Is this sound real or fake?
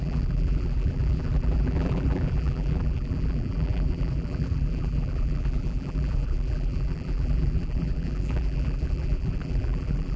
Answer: fake